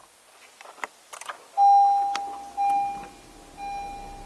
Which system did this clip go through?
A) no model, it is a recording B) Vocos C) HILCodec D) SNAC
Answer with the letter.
A